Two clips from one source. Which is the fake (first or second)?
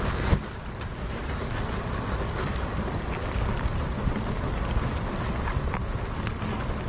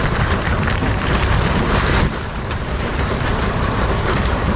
second